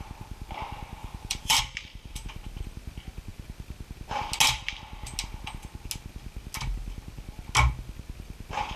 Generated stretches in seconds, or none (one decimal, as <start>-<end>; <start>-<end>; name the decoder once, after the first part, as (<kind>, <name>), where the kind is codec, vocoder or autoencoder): 1.0-1.6 (vocoder, BigVGAN v2)